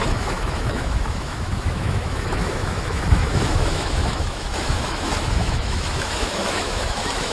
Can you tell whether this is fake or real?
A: fake